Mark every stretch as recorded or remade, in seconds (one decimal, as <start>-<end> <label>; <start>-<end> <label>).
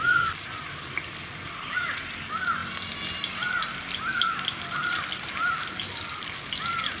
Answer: 0.0-7.0 recorded